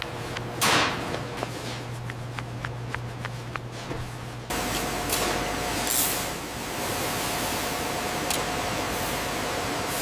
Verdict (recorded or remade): recorded